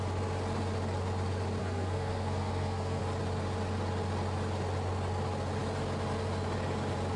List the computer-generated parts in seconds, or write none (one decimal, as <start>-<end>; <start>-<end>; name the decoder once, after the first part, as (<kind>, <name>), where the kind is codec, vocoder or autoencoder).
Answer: 1.6-3.0 (codec, SNAC)